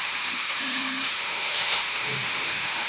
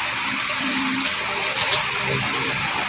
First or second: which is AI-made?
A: first